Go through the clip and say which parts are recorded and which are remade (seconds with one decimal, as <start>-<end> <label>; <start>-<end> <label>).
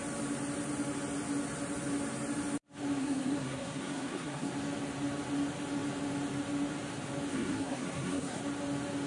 0.0-3.0 recorded; 3.0-4.5 remade; 4.5-7.3 recorded; 7.3-8.4 remade; 8.4-9.1 recorded